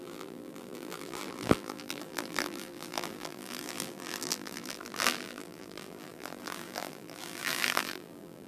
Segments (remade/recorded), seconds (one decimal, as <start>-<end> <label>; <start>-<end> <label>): 0.0-8.5 remade